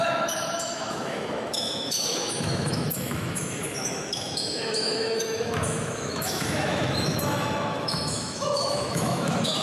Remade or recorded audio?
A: remade